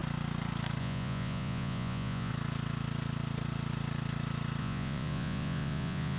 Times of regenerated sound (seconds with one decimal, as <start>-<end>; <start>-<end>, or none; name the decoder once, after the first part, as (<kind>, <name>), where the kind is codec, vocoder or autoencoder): 0.8-2.3 (vocoder, Vocos); 4.6-6.2